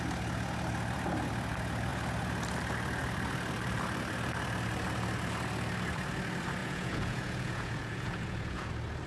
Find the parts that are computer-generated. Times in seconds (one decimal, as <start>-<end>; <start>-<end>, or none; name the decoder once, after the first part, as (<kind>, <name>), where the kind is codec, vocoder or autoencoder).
6.6-8.7 (vocoder, Vocos)